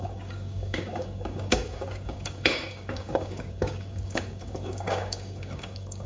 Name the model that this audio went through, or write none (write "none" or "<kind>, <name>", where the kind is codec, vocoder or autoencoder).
codec, DAC